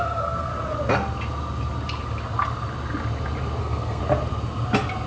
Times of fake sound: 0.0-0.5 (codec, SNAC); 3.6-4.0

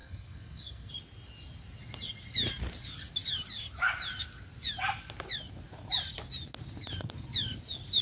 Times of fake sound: 0.0-0.9 (codec, SNAC)